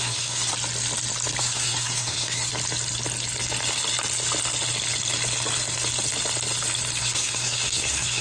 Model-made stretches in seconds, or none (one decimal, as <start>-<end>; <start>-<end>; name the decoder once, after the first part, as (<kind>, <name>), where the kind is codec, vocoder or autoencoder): 0.0-0.5 (codec, SNAC); 1.4-2.5; 7.0-8.2